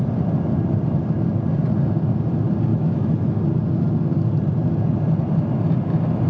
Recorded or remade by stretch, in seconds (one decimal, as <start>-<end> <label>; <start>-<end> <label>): 0.0-2.7 recorded; 2.7-3.4 remade; 3.4-6.3 recorded